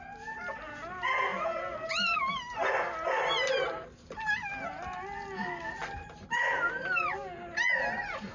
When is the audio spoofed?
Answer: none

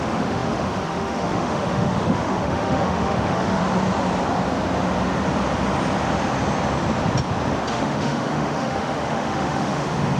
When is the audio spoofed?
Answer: 0.0-3.6 (autoencoder, DAC-VAE); 7.7-10.2

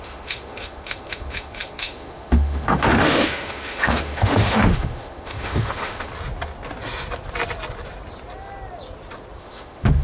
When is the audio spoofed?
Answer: 0.0-6.1 (autoencoder, DAC-VAE); 9.4-10.0

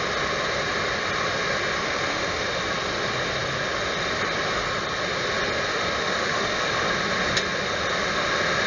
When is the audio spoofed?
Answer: 1.8-2.6 (autoencoder, DAC-VAE); 5.7-6.7